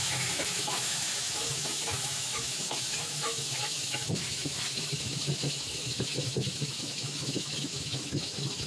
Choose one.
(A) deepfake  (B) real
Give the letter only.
A